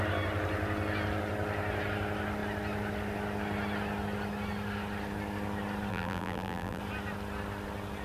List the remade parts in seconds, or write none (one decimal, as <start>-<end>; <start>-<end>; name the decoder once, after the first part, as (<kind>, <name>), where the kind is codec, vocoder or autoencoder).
5.9-6.8 (vocoder, BigVGAN v2)